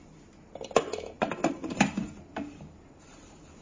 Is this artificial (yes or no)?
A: yes